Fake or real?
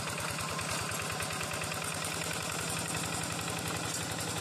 real